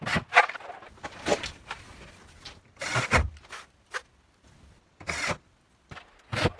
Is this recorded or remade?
recorded